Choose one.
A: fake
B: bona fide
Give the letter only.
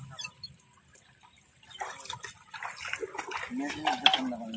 B